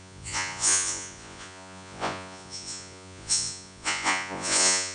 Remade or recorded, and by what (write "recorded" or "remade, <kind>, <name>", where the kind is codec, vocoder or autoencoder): remade, vocoder, Vocos